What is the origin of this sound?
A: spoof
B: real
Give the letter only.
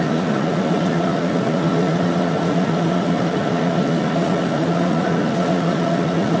A